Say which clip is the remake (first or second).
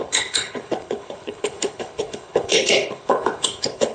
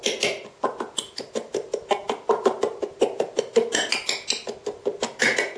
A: first